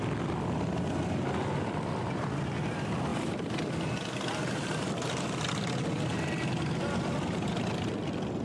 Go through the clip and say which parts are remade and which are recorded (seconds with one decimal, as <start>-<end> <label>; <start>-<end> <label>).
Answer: 0.0-8.4 recorded